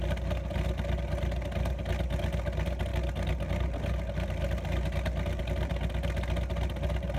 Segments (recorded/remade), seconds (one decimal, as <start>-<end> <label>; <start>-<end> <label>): 0.0-7.2 recorded